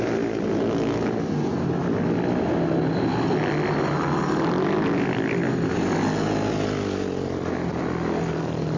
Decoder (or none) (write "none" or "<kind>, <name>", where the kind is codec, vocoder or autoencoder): none